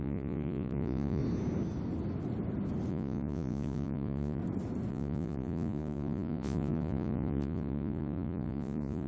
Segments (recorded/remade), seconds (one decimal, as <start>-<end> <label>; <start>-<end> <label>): 0.0-1.2 remade; 1.2-2.9 recorded; 2.9-4.4 remade; 4.4-4.9 recorded; 4.9-9.1 remade